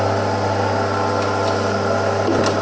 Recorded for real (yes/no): yes